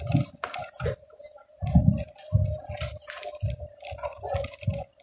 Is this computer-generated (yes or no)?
no